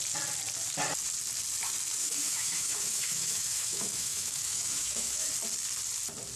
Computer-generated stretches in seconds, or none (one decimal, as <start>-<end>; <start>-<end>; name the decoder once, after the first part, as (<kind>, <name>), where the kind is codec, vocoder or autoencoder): 2.0-5.3 (autoencoder, DAC-VAE)